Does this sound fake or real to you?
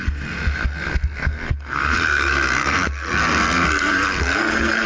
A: fake